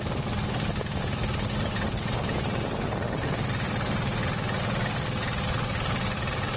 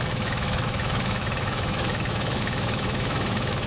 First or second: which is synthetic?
second